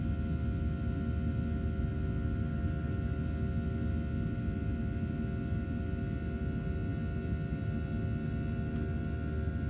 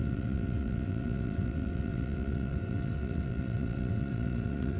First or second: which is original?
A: first